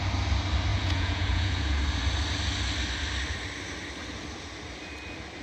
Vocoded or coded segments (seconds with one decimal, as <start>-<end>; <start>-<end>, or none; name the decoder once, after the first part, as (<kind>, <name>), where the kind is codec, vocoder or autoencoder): 0.7-1.8 (vocoder, Vocos)